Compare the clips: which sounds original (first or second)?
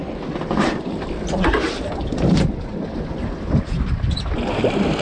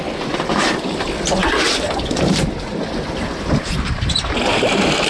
first